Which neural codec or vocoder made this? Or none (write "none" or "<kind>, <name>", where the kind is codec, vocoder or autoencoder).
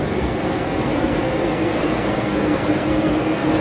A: codec, SNAC